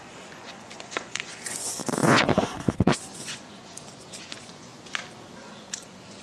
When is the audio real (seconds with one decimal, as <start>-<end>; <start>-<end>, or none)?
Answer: 4.7-5.4

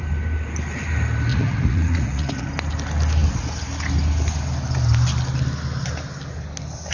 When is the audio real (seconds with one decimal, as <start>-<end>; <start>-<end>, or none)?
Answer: 0.0-1.3; 2.5-6.9

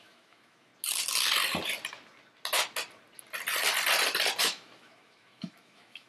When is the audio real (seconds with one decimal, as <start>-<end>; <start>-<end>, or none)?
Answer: 0.7-4.4

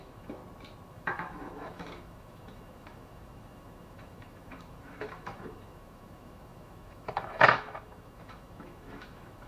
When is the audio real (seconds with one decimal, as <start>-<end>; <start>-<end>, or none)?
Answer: 0.4-0.9

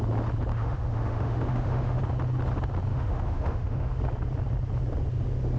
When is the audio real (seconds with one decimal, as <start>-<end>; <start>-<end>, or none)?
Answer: 0.0-0.5; 2.0-2.9; 4.0-5.6

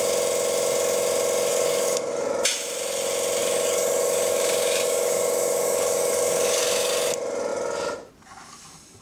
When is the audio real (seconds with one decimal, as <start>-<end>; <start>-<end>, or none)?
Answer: 0.0-1.5; 2.3-3.4; 6.9-9.0

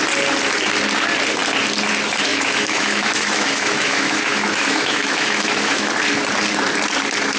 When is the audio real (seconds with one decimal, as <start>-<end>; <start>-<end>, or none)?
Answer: 0.0-2.3; 5.9-7.4

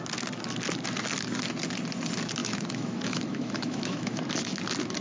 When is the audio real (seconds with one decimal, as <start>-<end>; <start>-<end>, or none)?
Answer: 0.0-2.4; 4.2-5.0